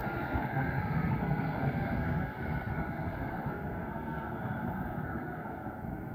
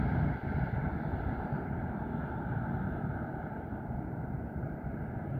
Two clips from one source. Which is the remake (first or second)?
first